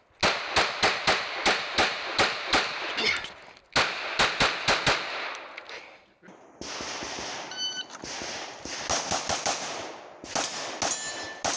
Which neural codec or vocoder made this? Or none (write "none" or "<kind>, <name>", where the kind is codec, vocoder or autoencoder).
none